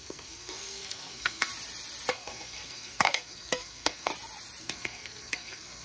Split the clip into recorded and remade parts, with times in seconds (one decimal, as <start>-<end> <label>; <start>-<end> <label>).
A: 0.0-1.5 remade; 1.5-2.1 recorded; 2.1-4.1 remade; 4.1-4.6 recorded; 4.6-5.8 remade